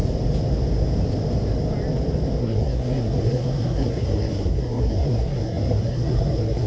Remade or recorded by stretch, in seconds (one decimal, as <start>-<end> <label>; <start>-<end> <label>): 0.0-2.4 recorded; 2.4-6.7 remade